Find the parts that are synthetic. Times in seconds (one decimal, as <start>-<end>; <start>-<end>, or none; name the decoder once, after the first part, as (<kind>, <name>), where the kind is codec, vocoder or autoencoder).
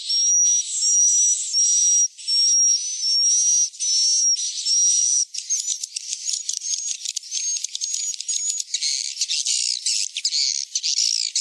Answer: 5.7-7.1 (vocoder, BigVGAN v2)